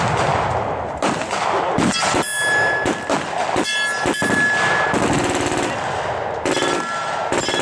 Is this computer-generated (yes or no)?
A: no